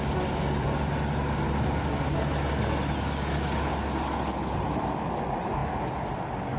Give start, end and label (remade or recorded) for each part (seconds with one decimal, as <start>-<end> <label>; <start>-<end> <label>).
0.0-6.6 recorded

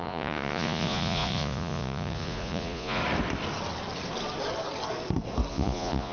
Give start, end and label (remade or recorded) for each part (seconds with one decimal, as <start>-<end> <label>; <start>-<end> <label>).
0.0-3.0 remade; 3.0-5.5 recorded; 5.5-6.1 remade

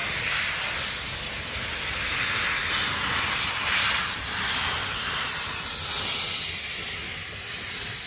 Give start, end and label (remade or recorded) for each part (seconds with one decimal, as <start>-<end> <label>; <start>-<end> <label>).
0.0-8.1 recorded

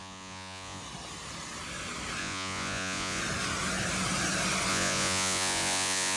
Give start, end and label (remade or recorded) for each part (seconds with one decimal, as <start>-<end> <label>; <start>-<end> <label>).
0.0-0.8 remade; 0.8-2.2 recorded; 2.2-3.2 remade; 3.2-4.7 recorded; 4.7-6.2 remade